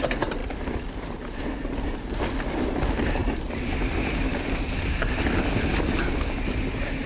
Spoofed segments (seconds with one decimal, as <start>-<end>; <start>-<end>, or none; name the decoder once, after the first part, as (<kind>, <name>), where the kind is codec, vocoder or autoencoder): none